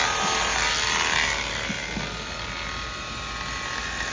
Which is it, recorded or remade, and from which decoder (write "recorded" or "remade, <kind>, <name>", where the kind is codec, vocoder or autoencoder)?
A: recorded